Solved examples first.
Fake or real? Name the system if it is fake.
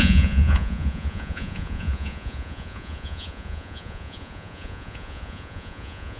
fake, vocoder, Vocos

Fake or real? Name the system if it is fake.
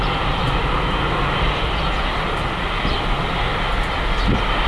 real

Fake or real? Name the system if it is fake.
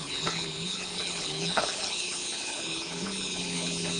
fake, codec, HILCodec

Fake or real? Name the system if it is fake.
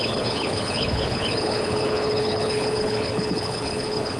fake, codec, HILCodec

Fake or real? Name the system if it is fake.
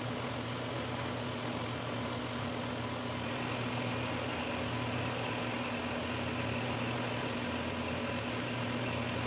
real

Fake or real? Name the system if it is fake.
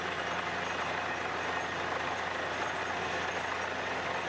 real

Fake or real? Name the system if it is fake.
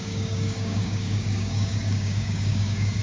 fake, codec, DAC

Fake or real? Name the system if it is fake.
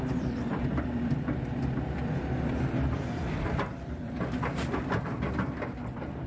fake, vocoder, BigVGAN v2